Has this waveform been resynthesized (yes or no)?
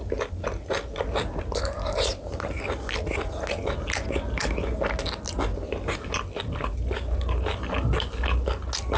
no